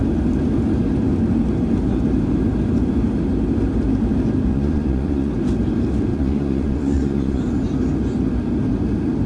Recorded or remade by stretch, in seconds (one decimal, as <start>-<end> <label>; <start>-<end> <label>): 0.0-4.5 recorded; 4.5-5.3 remade; 5.3-6.1 recorded; 6.1-7.4 remade; 7.4-9.3 recorded